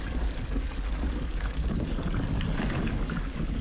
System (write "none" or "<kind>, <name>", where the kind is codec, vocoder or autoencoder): codec, DAC